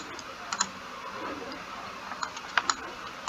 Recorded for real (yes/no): yes